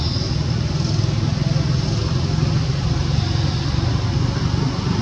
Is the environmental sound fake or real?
real